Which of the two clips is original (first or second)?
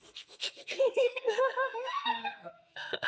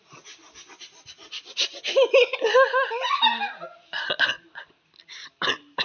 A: second